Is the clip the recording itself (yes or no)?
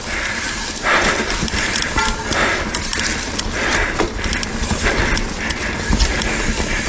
yes